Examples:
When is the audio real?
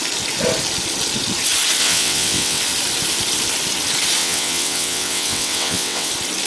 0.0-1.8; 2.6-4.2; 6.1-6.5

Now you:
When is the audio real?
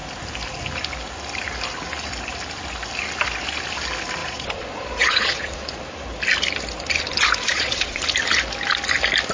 0.0-4.2; 5.8-7.5; 8.0-9.3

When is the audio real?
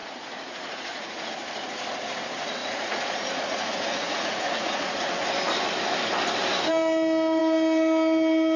1.3-2.6; 5.1-8.6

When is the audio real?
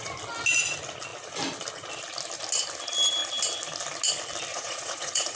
0.0-4.5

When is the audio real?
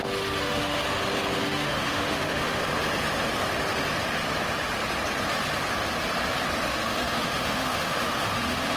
0.8-1.4; 2.6-6.6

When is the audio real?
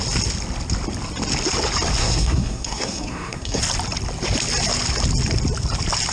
0.0-2.0; 3.6-6.1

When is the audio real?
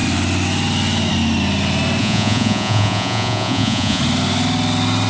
0.0-2.0; 4.0-5.1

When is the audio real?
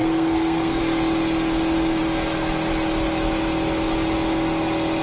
0.8-5.0